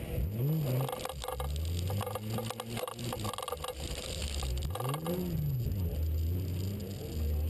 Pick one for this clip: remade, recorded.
recorded